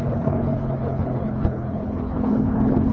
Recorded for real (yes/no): no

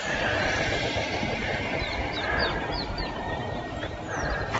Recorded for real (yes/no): no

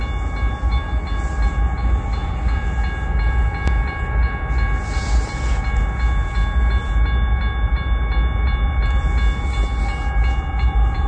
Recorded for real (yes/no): yes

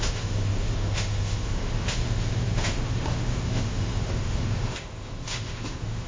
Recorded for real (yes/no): no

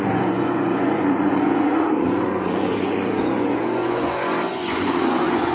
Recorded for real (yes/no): no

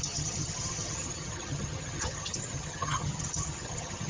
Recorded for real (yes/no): no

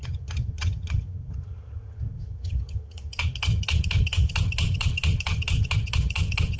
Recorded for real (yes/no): no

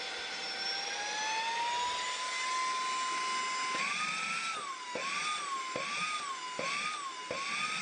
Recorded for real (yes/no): yes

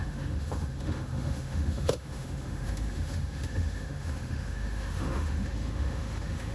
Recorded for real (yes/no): no